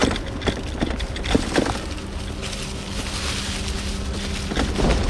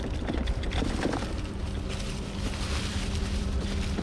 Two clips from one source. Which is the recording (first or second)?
first